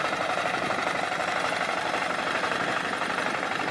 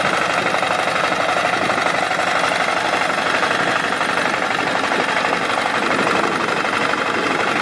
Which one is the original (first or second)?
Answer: second